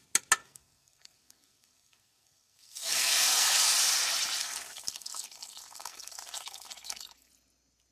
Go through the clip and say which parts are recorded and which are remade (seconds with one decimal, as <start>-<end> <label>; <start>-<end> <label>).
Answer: 0.0-0.4 recorded; 0.4-3.7 remade; 3.7-4.4 recorded; 4.4-7.3 remade; 7.3-7.9 recorded